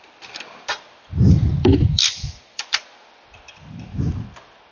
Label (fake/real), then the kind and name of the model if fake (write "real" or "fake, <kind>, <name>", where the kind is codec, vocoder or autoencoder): fake, vocoder, BigVGAN v2